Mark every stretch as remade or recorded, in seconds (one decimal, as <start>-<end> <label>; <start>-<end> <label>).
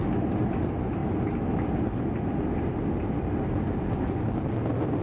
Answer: 0.0-5.0 recorded